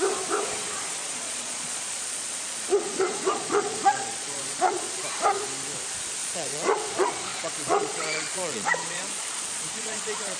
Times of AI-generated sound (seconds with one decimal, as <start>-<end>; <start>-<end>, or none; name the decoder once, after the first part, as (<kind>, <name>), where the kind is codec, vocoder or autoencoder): 1.0-4.9 (vocoder, Vocos); 6.2-10.4